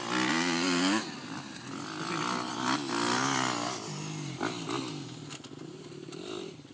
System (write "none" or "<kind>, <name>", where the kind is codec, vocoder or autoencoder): none